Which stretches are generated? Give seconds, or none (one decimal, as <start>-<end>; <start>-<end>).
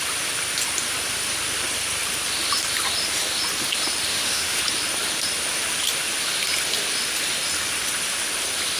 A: 4.1-4.6